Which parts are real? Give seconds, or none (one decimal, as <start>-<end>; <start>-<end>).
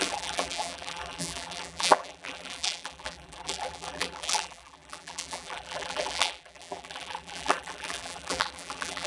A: none